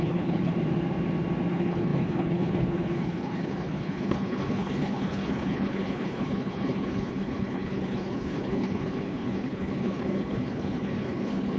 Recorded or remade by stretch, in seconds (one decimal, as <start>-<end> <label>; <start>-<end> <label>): 0.0-0.5 remade; 0.5-1.5 recorded; 1.5-11.6 remade